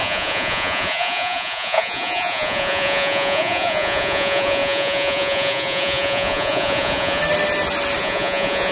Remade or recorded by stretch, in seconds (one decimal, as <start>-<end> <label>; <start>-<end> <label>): 0.0-7.2 remade; 7.2-8.0 recorded; 8.0-8.7 remade